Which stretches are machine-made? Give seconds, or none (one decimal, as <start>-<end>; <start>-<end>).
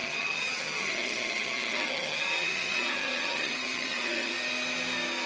0.0-4.3